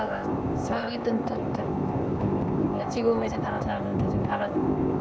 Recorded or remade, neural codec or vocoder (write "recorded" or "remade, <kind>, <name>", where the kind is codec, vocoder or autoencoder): remade, codec, ZipCodec